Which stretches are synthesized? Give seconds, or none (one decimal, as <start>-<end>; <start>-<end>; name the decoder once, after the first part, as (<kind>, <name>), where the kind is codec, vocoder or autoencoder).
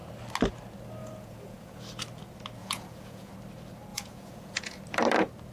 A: 1.0-1.8 (vocoder, Vocos); 2.6-3.3; 3.9-4.8